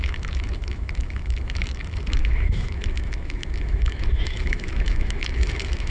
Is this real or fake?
fake